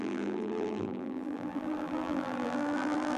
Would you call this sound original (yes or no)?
no